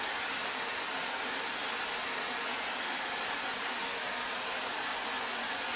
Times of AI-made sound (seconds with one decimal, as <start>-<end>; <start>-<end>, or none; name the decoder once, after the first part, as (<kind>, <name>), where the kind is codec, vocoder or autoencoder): 4.9-5.8 (vocoder, Vocos)